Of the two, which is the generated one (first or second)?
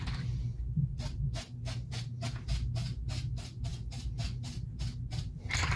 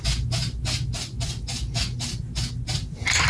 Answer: first